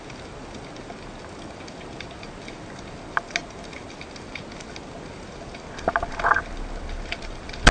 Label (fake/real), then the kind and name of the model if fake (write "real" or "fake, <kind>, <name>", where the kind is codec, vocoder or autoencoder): real